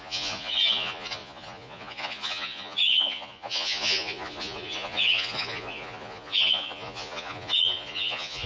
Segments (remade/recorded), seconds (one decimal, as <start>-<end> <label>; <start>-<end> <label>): 0.0-8.5 remade